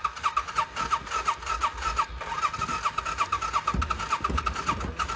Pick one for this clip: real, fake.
real